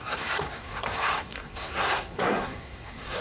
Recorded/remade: remade